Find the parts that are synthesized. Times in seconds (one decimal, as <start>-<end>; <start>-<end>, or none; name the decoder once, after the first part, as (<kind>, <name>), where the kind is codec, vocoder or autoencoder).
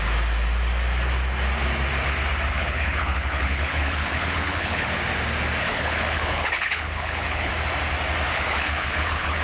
2.5-4.9 (codec, HILCodec); 5.6-7.5; 8.3-9.4